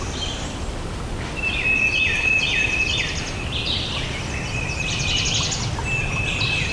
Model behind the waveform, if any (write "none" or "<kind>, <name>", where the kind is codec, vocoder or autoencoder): none